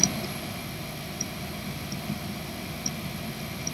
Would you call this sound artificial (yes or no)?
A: no